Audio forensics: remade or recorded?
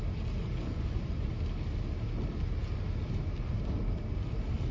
recorded